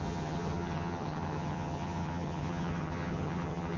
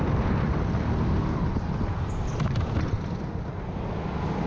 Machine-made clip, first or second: first